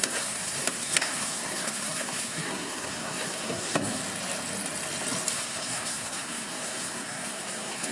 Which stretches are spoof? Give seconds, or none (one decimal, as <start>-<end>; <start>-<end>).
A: 0.0-4.0; 5.3-7.9